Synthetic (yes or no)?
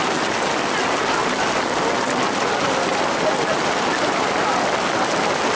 no